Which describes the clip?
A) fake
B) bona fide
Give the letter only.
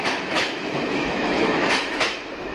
A